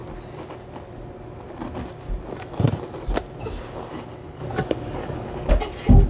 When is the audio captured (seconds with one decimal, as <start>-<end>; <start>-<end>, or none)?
0.0-4.4; 5.5-6.1